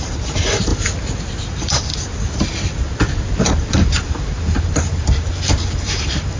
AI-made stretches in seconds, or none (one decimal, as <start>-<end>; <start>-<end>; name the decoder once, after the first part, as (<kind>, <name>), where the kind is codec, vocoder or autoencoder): 0.0-0.7 (vocoder, BigVGAN v2); 3.4-6.4